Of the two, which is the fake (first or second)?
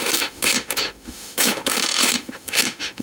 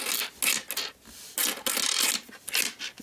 first